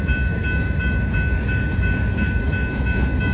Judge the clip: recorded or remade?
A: remade